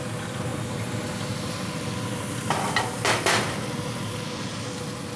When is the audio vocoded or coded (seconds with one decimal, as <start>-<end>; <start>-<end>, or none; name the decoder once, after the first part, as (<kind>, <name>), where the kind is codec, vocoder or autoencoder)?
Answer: none

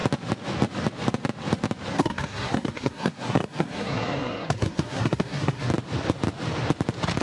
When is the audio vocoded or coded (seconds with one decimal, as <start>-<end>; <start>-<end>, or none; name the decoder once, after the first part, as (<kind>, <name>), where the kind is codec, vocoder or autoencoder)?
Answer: 1.9-5.7 (codec, SNAC)

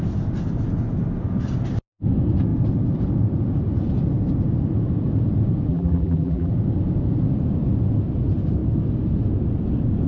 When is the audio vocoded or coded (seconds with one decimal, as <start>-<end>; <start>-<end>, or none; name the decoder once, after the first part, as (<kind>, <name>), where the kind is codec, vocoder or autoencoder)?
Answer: 5.7-6.5 (vocoder, BigVGAN v2)

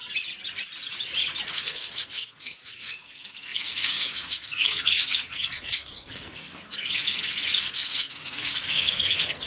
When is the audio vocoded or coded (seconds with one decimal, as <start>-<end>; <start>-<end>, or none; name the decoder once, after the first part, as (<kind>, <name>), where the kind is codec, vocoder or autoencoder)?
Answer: 1.5-9.5 (codec, SNAC)